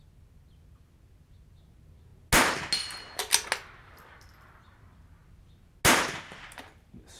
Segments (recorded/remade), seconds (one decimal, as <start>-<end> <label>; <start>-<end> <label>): 0.0-7.2 recorded